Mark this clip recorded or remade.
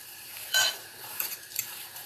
remade